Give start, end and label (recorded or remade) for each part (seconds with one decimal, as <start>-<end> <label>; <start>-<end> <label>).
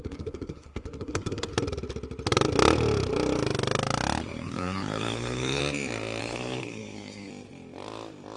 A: 0.0-1.5 remade; 1.5-4.2 recorded; 4.2-5.6 remade; 5.6-6.2 recorded; 6.2-7.3 remade; 7.3-8.4 recorded